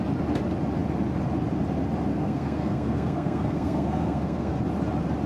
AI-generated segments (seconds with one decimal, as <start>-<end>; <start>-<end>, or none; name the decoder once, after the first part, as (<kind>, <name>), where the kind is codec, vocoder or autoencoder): 2.1-4.6 (codec, SNAC)